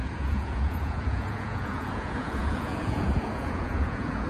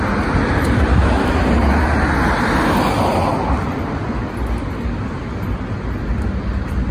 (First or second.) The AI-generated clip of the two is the first